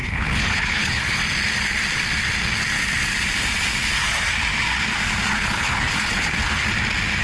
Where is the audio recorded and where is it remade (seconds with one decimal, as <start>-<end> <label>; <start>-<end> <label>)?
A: 0.0-1.2 remade; 1.2-5.3 recorded; 5.3-6.6 remade; 6.6-7.2 recorded